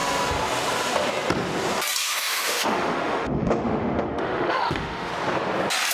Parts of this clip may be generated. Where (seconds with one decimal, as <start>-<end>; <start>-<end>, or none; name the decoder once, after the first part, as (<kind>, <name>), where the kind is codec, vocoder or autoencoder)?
2.0-5.1 (autoencoder, DAC-VAE)